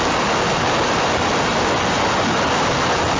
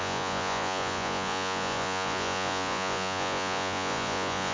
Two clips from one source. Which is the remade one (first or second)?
second